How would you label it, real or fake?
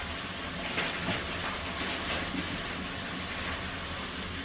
real